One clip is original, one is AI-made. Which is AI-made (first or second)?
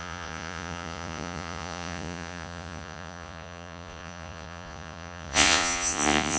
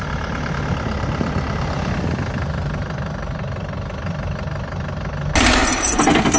first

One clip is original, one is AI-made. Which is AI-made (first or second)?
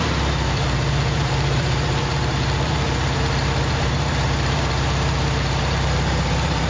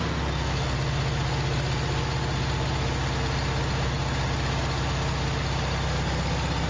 first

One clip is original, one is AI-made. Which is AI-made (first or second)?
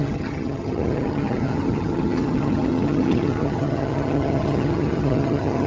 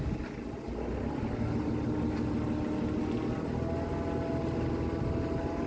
first